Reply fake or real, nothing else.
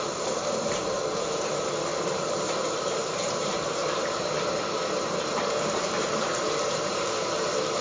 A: fake